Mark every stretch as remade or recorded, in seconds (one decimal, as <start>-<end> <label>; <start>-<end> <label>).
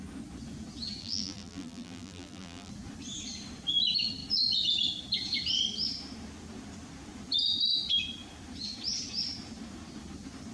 0.0-1.0 recorded; 1.0-2.7 remade; 2.7-10.5 recorded